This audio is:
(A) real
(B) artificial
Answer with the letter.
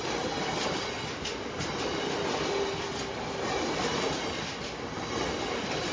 A